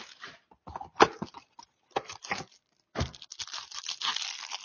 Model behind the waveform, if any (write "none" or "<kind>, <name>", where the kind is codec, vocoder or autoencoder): none